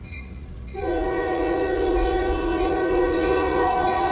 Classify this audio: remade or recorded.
remade